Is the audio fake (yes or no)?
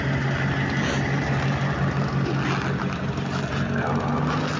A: no